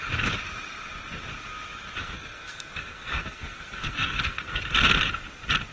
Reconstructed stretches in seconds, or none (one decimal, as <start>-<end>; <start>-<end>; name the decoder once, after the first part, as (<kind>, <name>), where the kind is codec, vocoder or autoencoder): 2.0-4.6 (codec, SNAC)